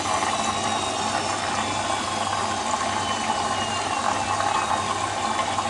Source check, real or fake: real